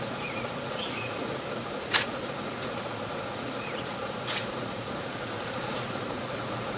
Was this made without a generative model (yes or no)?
no